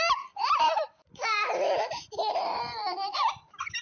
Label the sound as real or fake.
fake